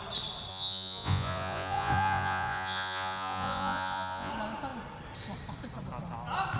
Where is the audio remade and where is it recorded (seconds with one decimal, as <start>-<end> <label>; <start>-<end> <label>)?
0.0-0.5 recorded; 0.5-4.3 remade; 4.3-6.6 recorded